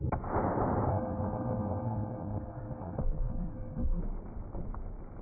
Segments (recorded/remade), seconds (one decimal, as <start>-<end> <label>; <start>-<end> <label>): 0.0-0.9 recorded; 0.9-4.0 remade; 4.0-5.2 recorded